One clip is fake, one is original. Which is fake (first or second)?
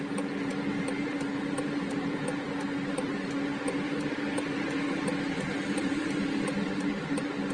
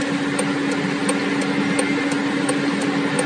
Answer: first